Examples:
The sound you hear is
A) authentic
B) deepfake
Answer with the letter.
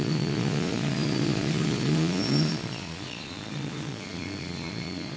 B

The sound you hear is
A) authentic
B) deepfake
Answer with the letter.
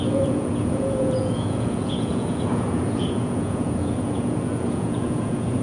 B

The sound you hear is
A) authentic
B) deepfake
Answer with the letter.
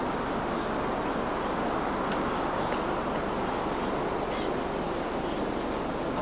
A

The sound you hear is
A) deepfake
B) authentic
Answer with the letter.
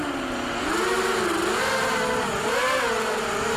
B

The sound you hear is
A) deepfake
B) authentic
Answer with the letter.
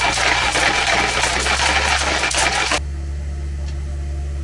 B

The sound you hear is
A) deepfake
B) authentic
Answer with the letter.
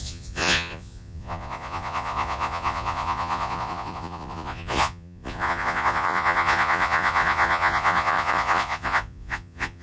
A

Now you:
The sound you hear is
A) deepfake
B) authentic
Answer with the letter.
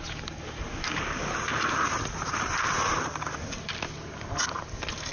B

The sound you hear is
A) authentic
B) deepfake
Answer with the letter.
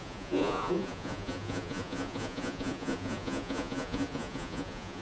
B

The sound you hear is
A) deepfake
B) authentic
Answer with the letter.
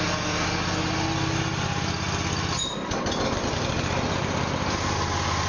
B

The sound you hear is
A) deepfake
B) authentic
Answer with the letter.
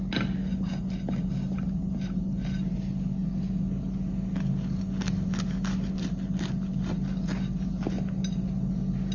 B